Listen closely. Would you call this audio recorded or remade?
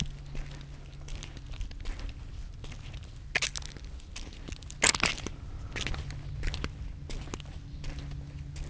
recorded